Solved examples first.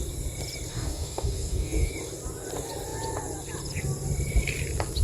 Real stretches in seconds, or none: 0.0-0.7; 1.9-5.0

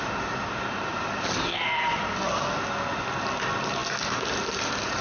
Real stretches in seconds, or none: 0.0-5.0

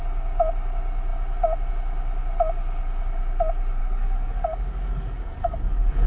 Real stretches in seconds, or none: 0.0-3.8

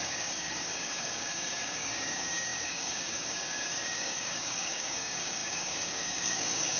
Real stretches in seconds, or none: none

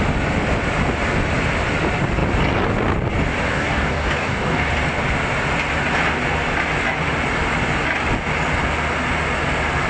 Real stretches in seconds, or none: 0.0-3.5; 4.7-9.9

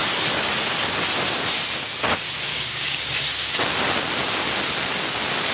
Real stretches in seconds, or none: 0.0-2.5; 3.2-5.5

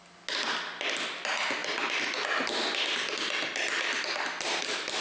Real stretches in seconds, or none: 0.0-5.0